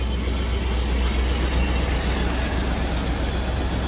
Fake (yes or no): no